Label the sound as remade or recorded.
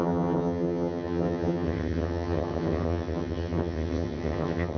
remade